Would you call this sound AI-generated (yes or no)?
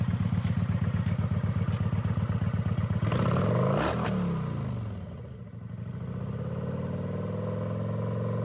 no